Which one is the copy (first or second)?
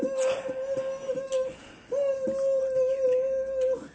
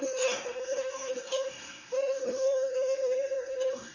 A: second